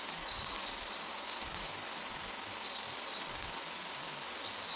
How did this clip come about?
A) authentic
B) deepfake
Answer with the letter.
A